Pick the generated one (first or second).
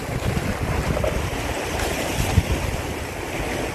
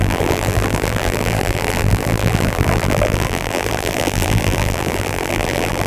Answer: second